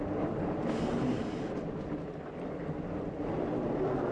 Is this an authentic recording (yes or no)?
yes